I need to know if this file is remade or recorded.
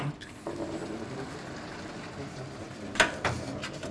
recorded